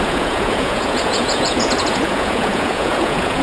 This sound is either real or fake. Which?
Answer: fake